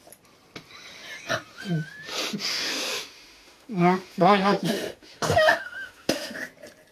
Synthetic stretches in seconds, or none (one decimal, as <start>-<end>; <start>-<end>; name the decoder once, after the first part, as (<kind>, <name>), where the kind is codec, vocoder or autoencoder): 2.5-6.4 (autoencoder, DAC-VAE)

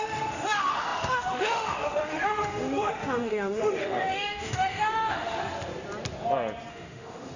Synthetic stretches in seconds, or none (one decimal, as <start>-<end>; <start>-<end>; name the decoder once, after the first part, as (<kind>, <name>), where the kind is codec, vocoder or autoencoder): 0.0-5.4 (autoencoder, DAC-VAE); 6.7-7.4

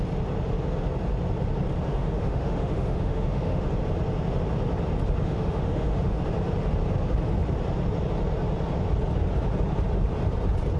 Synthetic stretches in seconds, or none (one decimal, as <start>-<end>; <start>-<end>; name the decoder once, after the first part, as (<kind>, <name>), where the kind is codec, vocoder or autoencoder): 1.9-3.7 (autoencoder, DAC-VAE); 5.2-6.2

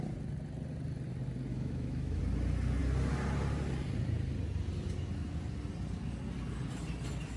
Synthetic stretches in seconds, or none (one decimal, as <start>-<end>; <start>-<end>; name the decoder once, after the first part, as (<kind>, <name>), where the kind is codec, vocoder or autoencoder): 1.5-2.2 (autoencoder, DAC-VAE)

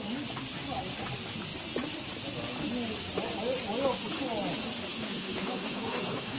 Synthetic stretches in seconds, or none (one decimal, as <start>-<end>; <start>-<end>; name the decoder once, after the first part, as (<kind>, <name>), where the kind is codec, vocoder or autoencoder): 4.9-6.4 (autoencoder, DAC-VAE)

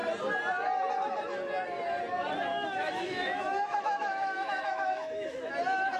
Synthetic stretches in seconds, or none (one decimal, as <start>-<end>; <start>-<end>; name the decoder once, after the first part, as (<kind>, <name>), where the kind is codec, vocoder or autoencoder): 2.5-5.5 (autoencoder, DAC-VAE)

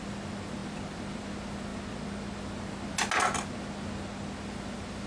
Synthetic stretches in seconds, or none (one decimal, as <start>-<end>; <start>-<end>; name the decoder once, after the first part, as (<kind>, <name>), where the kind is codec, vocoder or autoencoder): none

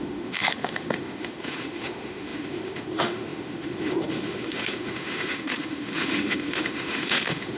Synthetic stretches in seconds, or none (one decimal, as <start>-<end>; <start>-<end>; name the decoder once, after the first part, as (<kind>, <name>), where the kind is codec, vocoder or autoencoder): 0.0-7.6 (autoencoder, DAC-VAE)